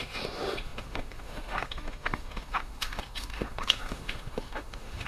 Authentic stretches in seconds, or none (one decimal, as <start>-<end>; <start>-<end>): none